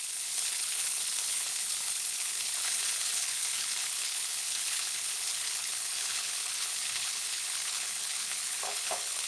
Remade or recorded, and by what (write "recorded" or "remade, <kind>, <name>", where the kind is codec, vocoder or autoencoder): remade, codec, HILCodec